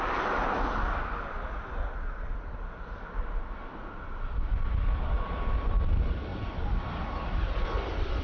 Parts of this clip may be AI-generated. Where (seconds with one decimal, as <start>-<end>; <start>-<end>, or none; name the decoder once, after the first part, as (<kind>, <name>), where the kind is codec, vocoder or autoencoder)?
none